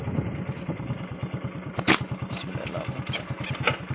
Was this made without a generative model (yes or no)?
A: yes